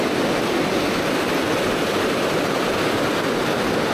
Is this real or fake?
real